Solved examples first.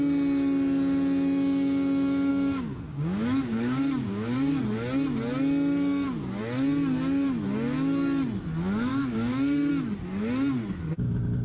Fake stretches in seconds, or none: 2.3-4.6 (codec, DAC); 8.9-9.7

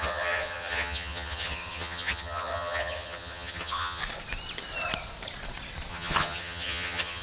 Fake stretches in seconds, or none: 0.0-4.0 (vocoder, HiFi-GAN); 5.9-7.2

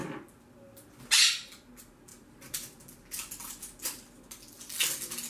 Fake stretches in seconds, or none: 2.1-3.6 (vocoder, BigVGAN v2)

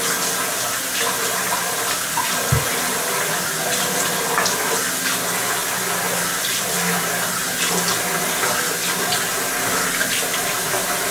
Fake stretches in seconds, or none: none